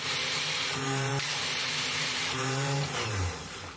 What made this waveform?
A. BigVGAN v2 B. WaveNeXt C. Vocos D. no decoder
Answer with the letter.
A